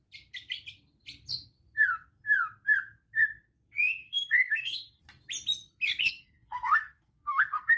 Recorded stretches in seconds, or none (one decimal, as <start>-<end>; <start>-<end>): 0.0-4.0; 5.0-6.0